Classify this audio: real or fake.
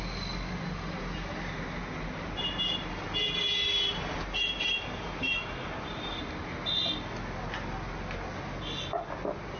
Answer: real